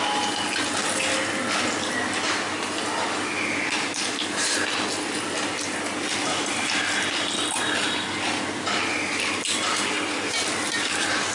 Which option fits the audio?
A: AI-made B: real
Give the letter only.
B